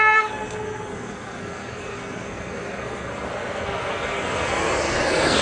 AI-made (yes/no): yes